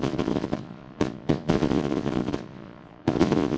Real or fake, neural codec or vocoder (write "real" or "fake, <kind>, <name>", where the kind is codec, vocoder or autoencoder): fake, vocoder, Vocos